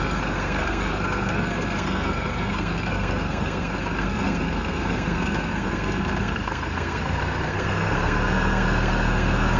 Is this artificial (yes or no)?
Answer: yes